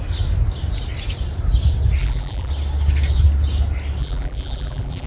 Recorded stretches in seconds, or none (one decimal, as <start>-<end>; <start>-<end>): 0.0-2.0; 2.5-4.0